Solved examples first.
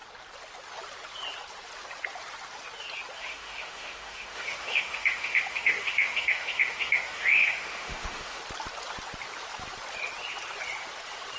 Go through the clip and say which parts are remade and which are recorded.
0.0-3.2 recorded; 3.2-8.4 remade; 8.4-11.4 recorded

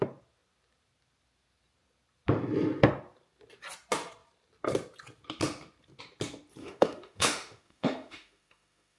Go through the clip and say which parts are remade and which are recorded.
0.0-6.6 recorded; 6.6-9.0 remade

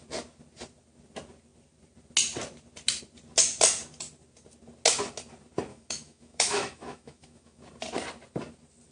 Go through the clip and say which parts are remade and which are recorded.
0.0-5.7 recorded; 5.7-7.6 remade; 7.6-8.9 recorded

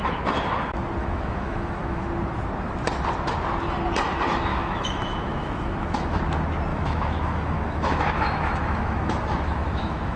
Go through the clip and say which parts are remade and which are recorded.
0.0-1.0 recorded; 1.0-2.0 remade; 2.0-4.5 recorded; 4.5-6.2 remade; 6.2-6.7 recorded; 6.7-10.2 remade

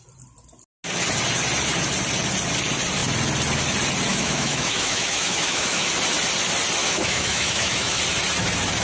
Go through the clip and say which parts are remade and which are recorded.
0.0-4.1 recorded; 4.1-5.9 remade; 5.9-6.8 recorded; 6.8-8.0 remade; 8.0-8.8 recorded